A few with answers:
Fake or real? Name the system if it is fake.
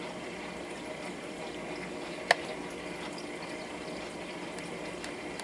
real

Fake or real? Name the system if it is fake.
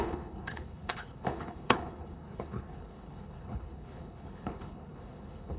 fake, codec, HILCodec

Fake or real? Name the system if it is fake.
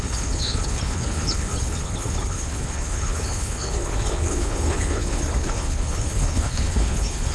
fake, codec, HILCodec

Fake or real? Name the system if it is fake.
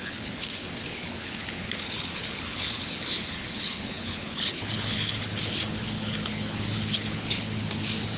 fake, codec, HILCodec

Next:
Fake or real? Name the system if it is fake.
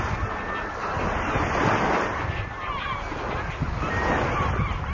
real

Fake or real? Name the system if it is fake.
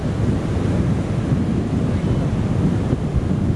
real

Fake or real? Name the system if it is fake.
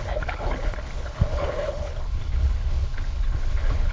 fake, codec, HILCodec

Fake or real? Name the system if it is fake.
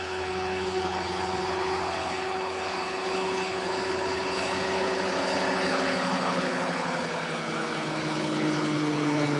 fake, codec, HILCodec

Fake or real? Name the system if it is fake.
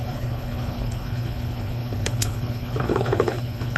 fake, codec, HILCodec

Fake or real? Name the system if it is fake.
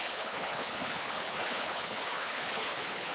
fake, codec, HILCodec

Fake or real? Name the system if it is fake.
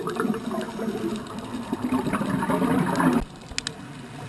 real